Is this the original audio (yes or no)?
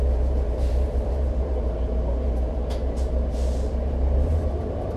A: no